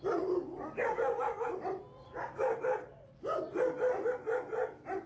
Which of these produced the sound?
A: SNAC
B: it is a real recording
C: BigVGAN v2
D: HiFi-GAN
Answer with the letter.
B